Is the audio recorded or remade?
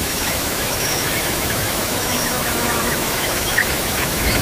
remade